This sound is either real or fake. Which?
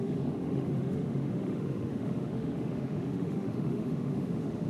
fake